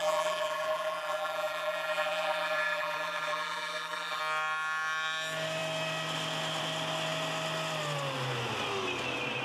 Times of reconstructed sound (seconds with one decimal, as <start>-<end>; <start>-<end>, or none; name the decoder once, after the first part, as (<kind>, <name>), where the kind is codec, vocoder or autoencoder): 0.0-4.2 (vocoder, BigVGAN v2)